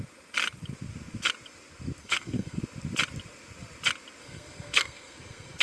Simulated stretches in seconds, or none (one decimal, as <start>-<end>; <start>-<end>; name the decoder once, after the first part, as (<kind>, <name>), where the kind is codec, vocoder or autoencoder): 2.0-2.6 (codec, SNAC); 4.2-5.6